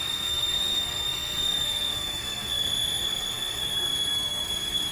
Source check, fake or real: fake